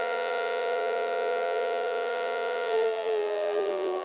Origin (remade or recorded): remade